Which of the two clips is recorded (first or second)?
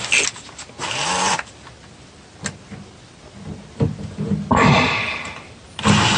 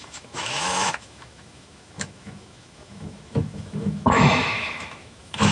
first